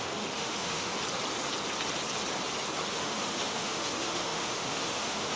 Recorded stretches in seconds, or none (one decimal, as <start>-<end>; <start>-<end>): 0.9-2.9